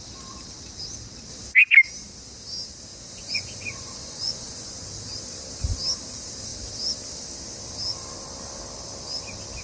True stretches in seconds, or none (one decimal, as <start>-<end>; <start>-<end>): 0.0-2.9; 4.9-9.6

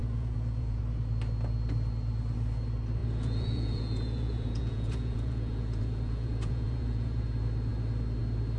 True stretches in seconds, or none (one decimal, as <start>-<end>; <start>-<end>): 0.8-3.0; 7.2-8.6

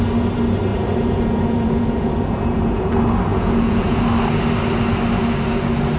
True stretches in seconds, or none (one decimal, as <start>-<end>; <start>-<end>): 0.0-0.7; 2.9-3.3; 4.0-6.0

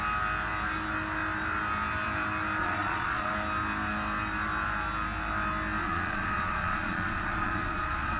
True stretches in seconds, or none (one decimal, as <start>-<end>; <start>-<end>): 0.0-2.6; 3.3-5.8

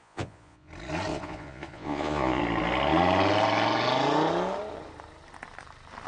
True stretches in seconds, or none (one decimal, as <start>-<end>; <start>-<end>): 0.7-1.1; 2.4-6.1

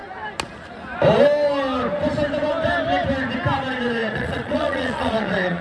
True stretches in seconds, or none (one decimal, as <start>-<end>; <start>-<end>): 0.0-4.0

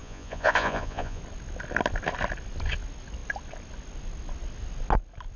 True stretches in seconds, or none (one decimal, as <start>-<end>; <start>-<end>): 1.2-5.4